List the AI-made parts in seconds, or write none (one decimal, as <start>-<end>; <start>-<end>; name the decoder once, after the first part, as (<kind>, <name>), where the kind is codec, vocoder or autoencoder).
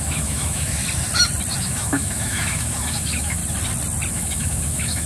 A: 0.0-0.8 (autoencoder, DAC-VAE); 1.6-3.4; 4.1-5.1